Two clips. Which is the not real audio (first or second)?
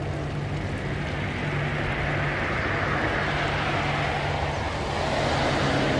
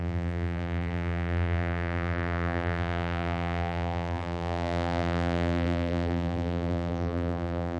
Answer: second